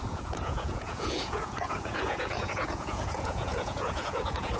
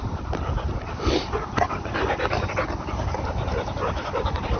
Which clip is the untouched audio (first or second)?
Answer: second